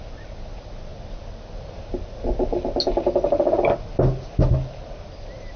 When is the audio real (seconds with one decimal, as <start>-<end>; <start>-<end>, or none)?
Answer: 0.0-5.6